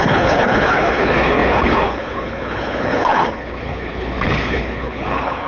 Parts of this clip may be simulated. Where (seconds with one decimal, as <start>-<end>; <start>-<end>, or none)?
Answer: 0.0-5.5